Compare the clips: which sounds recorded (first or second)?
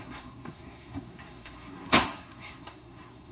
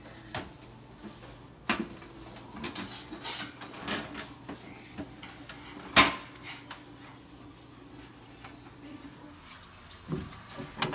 second